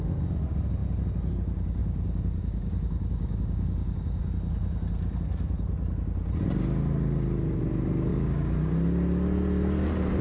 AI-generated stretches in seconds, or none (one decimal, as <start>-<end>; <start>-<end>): 1.8-4.2; 8.1-8.7